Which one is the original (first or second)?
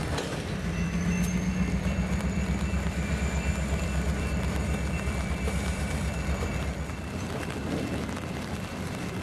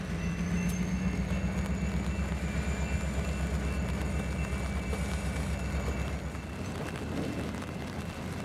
second